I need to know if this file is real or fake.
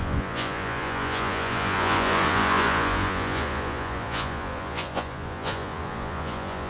fake